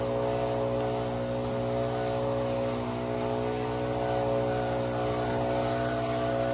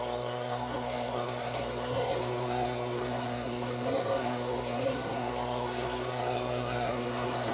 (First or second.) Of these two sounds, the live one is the first